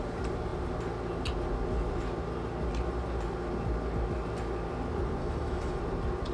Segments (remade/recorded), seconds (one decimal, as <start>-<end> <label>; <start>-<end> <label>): 0.0-5.2 recorded; 5.2-5.8 remade; 5.8-6.3 recorded